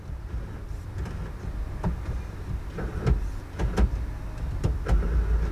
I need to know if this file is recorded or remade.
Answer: recorded